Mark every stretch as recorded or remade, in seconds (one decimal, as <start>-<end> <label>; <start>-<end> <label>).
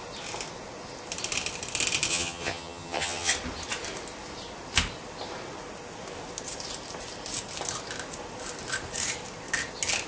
0.0-2.1 recorded; 2.1-3.3 remade; 3.3-10.1 recorded